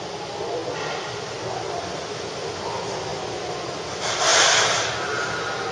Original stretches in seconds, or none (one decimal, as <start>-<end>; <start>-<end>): 0.0-0.6; 1.4-5.7